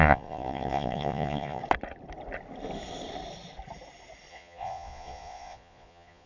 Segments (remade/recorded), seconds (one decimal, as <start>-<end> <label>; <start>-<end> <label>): 0.0-1.6 remade; 1.6-4.3 recorded; 4.3-6.3 remade